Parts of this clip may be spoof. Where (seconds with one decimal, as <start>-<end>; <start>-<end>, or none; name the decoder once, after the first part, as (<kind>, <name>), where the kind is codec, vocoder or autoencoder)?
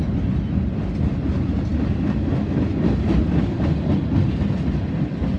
none